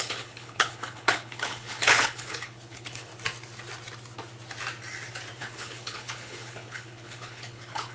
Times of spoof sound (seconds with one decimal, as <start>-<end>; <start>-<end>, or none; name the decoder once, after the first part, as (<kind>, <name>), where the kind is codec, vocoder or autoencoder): 0.0-3.1 (codec, HILCodec); 5.4-7.9